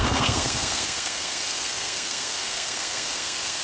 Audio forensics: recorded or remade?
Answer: remade